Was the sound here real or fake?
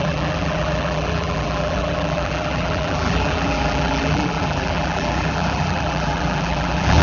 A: fake